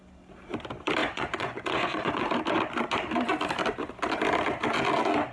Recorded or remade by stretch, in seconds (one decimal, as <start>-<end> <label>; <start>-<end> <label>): 0.0-1.0 recorded; 1.0-2.3 remade; 2.3-5.3 recorded